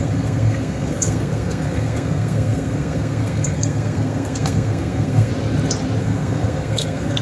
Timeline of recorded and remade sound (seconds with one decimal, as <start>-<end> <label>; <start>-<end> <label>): 0.0-5.3 remade; 5.3-6.0 recorded; 6.0-7.2 remade